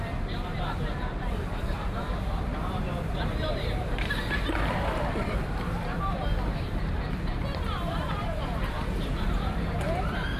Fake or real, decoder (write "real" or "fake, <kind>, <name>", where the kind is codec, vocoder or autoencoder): fake, vocoder, BigVGAN v2